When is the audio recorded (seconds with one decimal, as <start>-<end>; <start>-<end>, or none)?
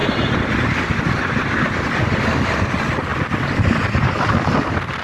0.0-5.0